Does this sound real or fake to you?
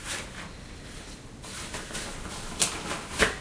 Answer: real